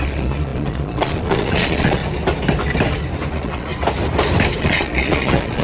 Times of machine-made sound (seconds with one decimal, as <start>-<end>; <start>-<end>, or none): 0.0-2.0; 3.3-3.7; 4.6-5.6